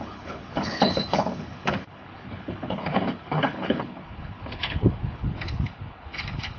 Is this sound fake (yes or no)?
yes